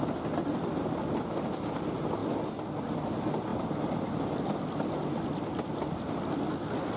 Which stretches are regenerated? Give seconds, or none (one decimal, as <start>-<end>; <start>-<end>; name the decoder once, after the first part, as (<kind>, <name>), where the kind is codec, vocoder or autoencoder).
none